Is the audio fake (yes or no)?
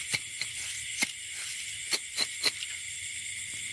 no